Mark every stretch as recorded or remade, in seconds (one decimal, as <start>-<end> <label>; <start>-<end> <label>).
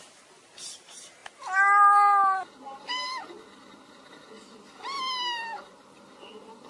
0.0-6.7 recorded